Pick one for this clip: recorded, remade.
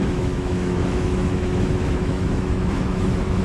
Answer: remade